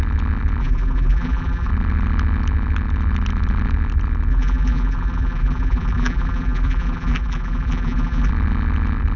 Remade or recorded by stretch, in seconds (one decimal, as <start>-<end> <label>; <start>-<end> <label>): 0.0-0.6 recorded; 0.6-1.7 remade; 1.7-4.3 recorded; 4.3-8.3 remade; 8.3-9.2 recorded